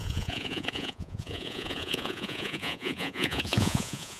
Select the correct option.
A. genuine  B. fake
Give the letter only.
B